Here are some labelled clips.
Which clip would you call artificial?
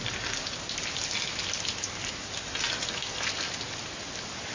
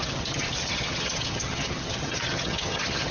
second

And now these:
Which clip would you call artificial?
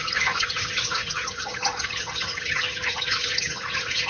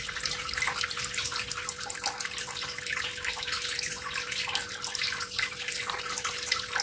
first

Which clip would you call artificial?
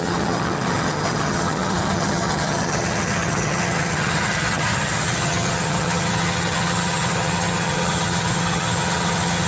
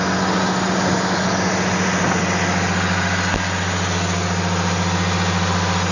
first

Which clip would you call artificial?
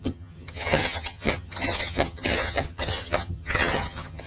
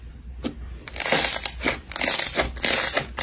first